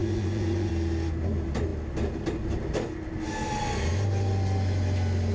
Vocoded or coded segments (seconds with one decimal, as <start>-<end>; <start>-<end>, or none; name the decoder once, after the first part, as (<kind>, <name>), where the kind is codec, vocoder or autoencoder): 0.0-0.7 (vocoder, Vocos)